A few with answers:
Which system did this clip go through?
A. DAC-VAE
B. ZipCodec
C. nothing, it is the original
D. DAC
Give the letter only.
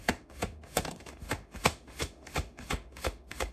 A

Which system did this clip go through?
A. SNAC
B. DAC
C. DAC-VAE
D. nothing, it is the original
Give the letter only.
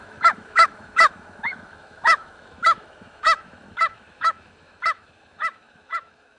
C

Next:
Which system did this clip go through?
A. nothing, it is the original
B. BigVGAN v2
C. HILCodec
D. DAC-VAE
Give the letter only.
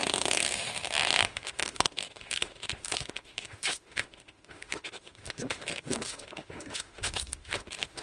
D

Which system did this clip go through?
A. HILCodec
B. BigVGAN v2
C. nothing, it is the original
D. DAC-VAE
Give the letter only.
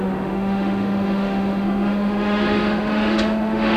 D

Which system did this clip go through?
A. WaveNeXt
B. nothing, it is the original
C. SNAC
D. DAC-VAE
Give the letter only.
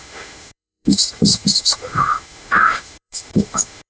D